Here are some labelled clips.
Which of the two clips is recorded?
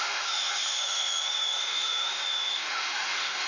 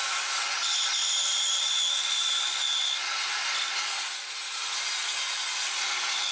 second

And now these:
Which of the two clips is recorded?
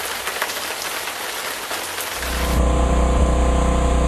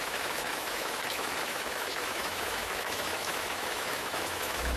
first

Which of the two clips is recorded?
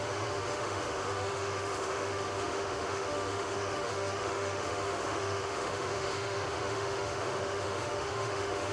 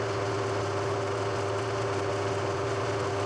second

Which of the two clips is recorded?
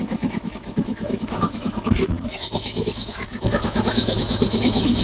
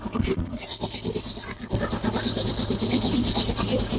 second